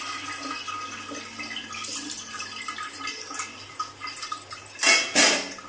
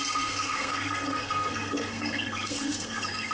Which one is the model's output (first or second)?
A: second